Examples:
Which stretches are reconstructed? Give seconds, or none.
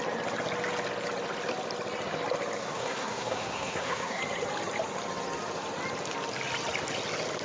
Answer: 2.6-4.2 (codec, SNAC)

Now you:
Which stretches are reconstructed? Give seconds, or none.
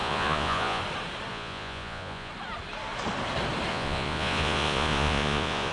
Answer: 0.0-0.8 (vocoder, Vocos); 1.3-2.3; 3.7-5.7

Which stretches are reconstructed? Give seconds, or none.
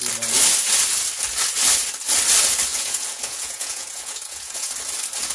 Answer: 2.7-4.7 (vocoder, Vocos)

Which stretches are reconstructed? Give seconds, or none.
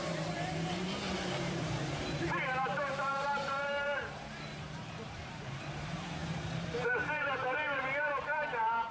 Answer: 0.0-8.9 (vocoder, BigVGAN v2)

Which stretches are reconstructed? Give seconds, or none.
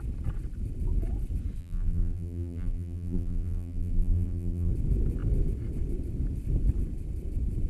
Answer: 1.6-4.7 (vocoder, BigVGAN v2)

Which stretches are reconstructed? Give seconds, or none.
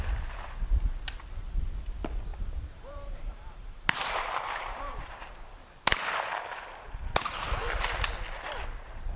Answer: 2.3-5.1 (vocoder, BigVGAN v2)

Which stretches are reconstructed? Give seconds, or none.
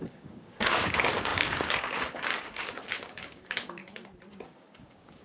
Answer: 0.0-3.8 (codec, DAC); 4.3-5.2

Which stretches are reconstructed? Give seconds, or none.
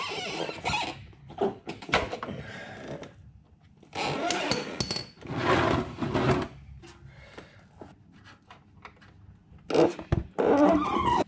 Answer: 1.2-1.7 (codec, HILCodec)